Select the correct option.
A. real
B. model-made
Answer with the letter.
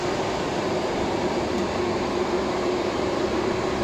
A